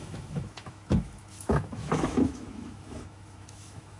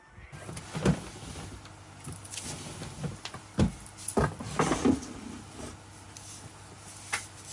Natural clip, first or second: second